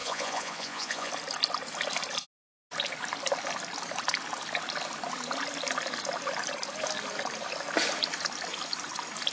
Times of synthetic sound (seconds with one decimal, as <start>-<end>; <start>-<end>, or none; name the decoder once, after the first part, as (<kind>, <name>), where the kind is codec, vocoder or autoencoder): 0.0-1.1 (vocoder, Vocos)